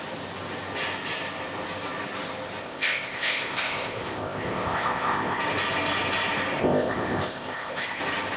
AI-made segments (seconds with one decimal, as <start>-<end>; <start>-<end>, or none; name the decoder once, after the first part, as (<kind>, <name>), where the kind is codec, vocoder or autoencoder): 2.6-5.4 (codec, ZipCodec); 6.6-8.0